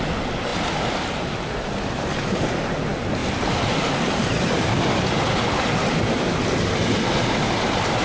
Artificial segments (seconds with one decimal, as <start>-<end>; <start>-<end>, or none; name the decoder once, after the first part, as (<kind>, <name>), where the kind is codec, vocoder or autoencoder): none